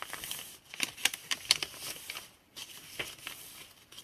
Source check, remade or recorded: recorded